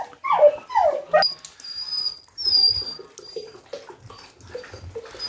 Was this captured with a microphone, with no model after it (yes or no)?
yes